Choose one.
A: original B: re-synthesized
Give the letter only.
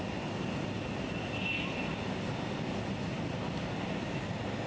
A